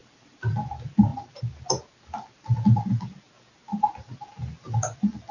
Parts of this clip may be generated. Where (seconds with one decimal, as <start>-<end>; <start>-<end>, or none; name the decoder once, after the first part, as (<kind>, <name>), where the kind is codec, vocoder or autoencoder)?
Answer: none